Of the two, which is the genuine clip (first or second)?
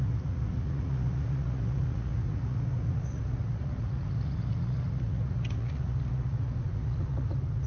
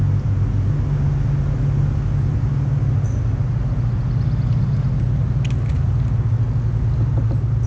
second